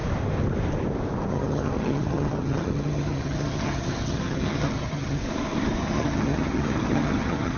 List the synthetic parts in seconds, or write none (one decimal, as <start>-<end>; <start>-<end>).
1.3-5.2; 5.8-7.6